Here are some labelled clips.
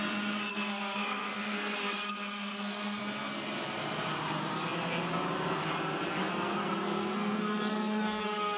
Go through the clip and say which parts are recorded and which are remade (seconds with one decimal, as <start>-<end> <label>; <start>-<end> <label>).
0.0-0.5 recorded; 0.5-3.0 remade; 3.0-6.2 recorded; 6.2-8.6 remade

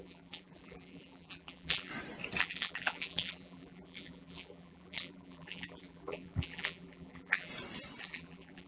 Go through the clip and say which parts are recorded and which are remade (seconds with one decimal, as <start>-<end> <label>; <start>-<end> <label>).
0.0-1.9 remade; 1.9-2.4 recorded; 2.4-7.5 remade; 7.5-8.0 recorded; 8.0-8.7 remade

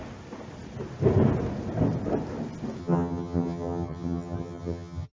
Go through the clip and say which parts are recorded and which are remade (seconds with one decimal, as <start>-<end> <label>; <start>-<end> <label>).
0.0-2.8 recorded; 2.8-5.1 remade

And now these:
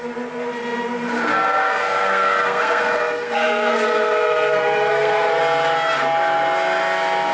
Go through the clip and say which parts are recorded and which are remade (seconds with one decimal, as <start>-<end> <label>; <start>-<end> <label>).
0.0-1.3 recorded; 1.3-5.4 remade; 5.4-7.3 recorded